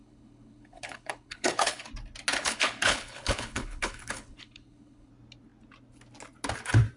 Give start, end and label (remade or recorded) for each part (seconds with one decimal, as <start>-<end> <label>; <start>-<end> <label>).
0.0-1.9 remade; 1.9-2.4 recorded; 2.4-5.1 remade; 5.1-7.0 recorded